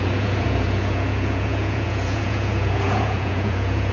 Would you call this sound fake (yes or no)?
yes